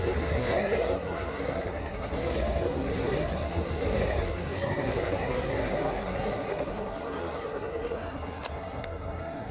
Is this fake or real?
fake